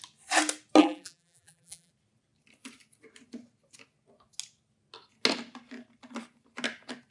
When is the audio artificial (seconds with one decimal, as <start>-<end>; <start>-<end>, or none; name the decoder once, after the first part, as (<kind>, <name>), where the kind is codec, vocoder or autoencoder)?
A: 0.8-1.9 (vocoder, BigVGAN v2)